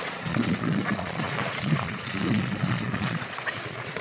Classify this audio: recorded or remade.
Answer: remade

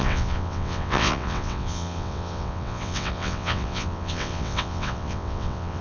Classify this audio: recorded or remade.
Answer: remade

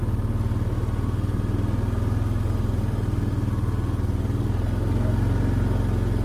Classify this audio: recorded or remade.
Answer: recorded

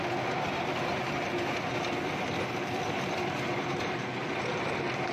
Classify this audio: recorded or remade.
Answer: recorded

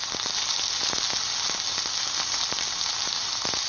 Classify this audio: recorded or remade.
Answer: recorded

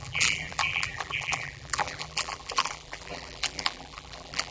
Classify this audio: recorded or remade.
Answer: remade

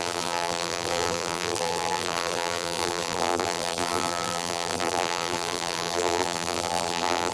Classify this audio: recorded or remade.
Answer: remade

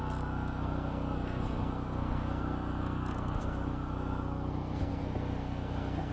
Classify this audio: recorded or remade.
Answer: remade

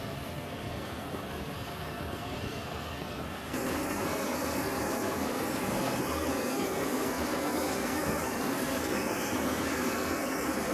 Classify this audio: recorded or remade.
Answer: remade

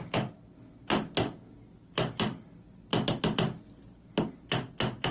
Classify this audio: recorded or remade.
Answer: recorded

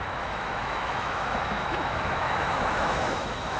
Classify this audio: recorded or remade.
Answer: remade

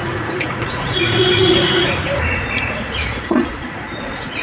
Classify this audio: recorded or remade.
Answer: remade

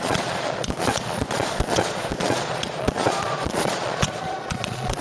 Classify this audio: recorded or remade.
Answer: remade